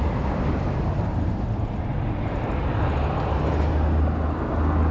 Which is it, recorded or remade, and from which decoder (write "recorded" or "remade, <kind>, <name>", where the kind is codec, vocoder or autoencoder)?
recorded